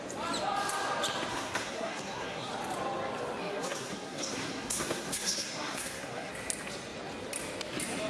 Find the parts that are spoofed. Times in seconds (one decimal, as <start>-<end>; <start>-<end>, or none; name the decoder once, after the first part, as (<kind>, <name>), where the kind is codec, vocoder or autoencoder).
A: 1.3-2.5 (codec, SNAC); 3.4-6.3